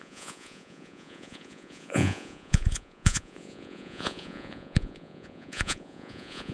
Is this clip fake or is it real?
fake